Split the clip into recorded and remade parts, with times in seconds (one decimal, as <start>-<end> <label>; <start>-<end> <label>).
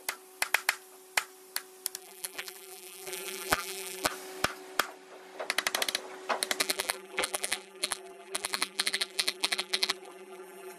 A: 0.0-2.0 recorded; 2.0-4.1 remade; 4.1-6.6 recorded; 6.6-10.8 remade